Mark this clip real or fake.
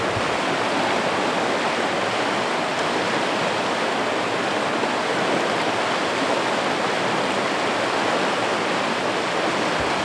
real